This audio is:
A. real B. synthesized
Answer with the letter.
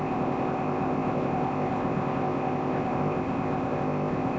B